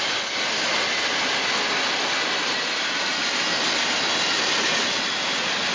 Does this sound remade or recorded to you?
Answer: recorded